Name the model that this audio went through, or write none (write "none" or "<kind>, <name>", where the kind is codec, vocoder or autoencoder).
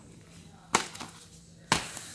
none